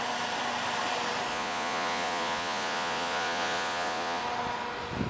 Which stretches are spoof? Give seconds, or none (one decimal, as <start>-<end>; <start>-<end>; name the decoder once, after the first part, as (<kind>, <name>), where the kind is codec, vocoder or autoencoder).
1.3-4.2 (vocoder, Vocos)